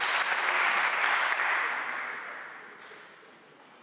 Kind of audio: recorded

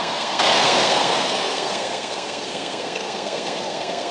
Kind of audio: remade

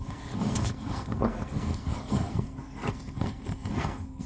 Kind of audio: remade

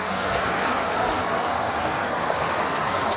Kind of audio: remade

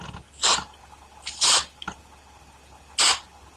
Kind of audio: recorded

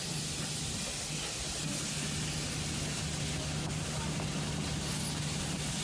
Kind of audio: recorded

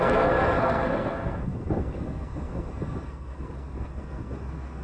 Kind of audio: remade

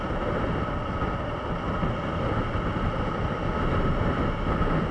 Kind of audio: recorded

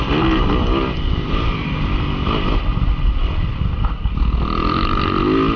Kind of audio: recorded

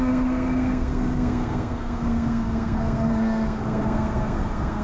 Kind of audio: remade